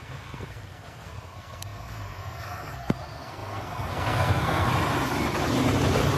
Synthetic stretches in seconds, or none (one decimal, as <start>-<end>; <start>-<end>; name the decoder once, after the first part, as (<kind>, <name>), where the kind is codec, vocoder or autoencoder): 0.0-4.7 (codec, SNAC)